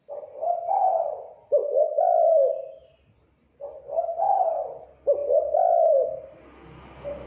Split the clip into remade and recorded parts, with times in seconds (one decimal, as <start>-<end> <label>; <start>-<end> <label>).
0.0-1.6 recorded; 1.6-2.3 remade; 2.3-7.3 recorded